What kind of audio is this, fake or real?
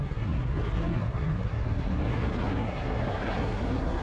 fake